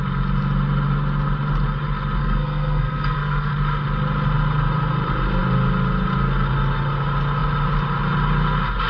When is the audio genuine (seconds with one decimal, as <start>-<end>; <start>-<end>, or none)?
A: 0.0-2.2; 3.5-8.9